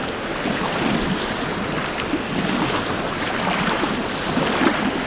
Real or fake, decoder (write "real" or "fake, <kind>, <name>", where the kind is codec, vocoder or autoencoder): real